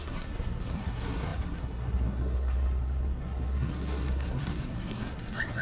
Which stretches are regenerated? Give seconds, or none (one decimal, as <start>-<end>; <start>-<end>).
0.0-5.6